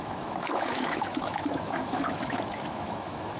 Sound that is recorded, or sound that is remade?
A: remade